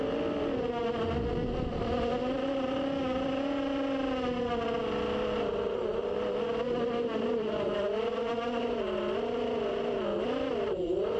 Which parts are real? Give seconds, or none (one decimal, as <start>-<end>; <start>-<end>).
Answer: 0.0-11.2